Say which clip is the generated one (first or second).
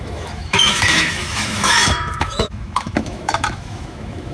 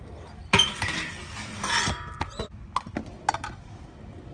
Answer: first